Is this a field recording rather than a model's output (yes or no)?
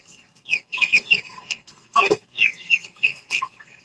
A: no